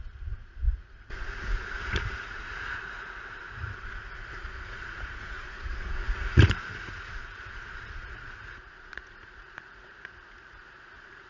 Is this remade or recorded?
remade